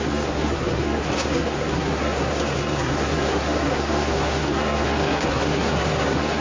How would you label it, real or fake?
fake